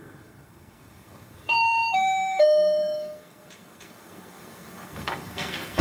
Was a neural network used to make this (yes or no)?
yes